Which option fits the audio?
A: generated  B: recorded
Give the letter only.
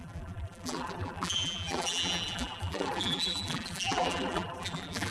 A